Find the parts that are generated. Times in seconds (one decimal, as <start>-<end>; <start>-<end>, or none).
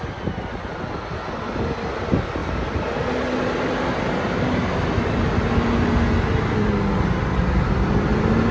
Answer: none